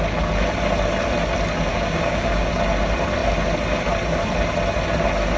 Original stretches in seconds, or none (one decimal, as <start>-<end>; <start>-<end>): 0.0-1.7; 2.5-5.4